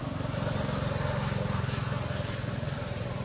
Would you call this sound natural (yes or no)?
yes